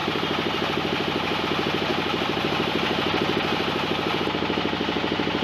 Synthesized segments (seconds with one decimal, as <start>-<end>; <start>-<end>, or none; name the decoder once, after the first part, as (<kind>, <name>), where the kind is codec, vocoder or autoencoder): 0.0-1.4 (vocoder, BigVGAN v2); 1.9-4.2